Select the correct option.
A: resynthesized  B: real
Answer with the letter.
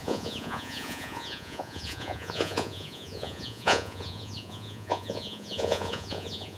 A